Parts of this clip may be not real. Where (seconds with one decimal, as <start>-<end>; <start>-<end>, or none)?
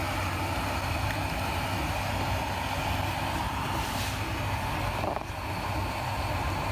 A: none